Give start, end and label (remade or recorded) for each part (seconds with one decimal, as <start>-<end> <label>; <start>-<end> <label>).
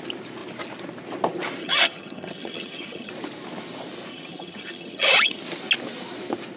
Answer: 0.0-1.6 recorded; 1.6-3.1 remade; 3.1-4.1 recorded; 4.1-5.4 remade; 5.4-6.6 recorded